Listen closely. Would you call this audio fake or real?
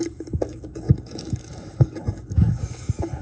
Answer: fake